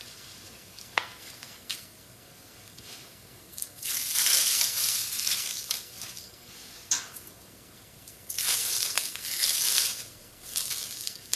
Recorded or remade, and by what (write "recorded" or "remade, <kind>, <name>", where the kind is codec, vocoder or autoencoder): remade, codec, SNAC